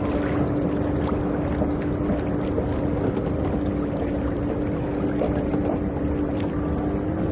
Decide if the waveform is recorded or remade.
recorded